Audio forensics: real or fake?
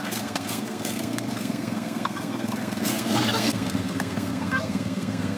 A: fake